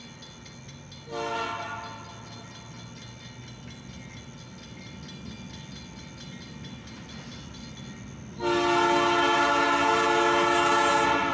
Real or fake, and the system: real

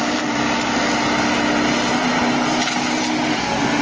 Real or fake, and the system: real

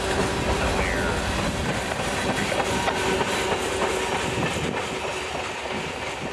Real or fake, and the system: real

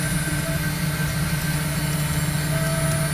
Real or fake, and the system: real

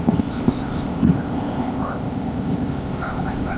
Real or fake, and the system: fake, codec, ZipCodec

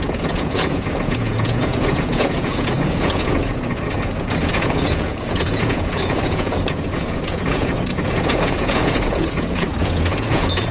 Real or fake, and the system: fake, vocoder, Vocos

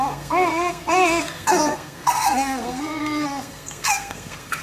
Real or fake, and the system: fake, codec, SNAC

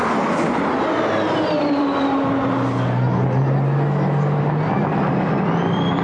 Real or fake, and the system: real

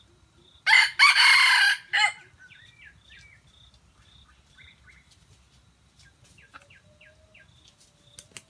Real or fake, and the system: real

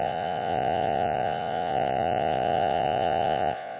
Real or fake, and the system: fake, vocoder, Vocos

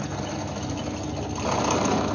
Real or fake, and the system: real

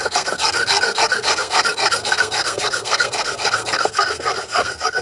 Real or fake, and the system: fake, codec, SNAC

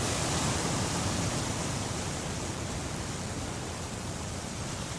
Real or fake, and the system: fake, vocoder, BigVGAN v2